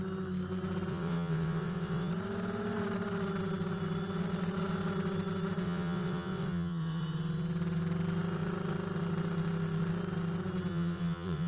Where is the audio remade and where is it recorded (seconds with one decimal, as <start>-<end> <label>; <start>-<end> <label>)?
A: 0.0-0.9 recorded; 0.9-2.1 remade; 2.1-5.6 recorded; 5.6-7.0 remade; 7.0-10.7 recorded; 10.7-11.5 remade